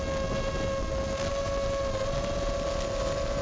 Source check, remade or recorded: recorded